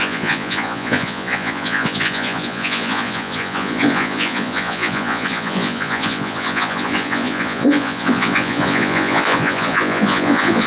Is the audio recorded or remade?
remade